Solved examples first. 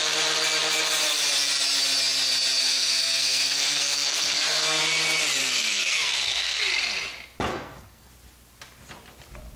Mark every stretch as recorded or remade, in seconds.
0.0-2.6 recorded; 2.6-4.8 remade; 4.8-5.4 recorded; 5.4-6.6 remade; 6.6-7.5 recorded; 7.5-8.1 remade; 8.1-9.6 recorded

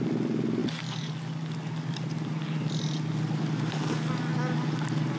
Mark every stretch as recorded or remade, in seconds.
0.0-5.2 recorded